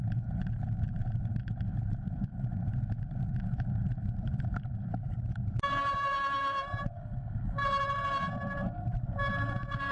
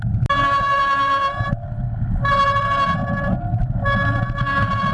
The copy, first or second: first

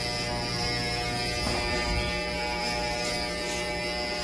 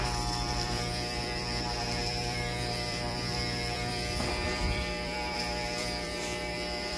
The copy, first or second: second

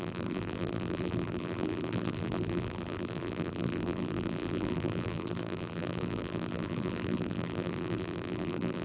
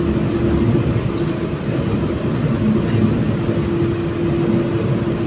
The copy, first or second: first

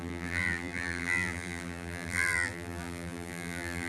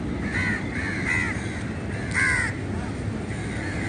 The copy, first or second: first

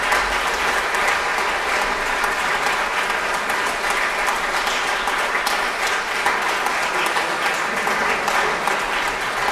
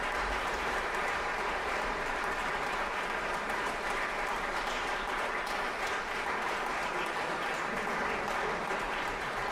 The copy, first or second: second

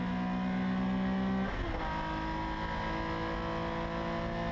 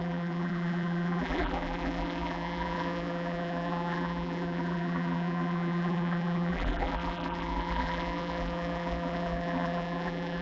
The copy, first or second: second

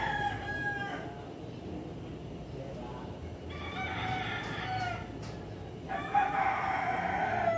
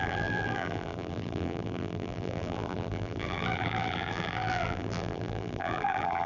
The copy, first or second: second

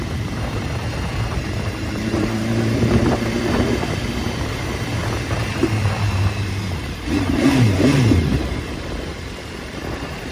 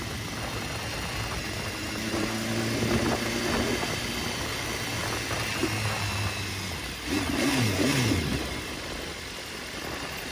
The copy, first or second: first